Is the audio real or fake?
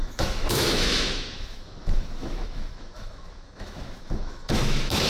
fake